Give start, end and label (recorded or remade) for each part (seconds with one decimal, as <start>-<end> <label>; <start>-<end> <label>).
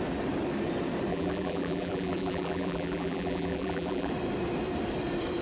0.0-1.1 recorded; 1.1-4.1 remade; 4.1-5.4 recorded